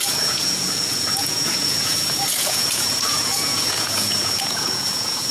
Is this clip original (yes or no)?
no